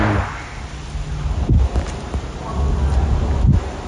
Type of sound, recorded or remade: recorded